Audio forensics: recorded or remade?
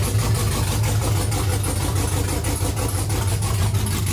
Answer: recorded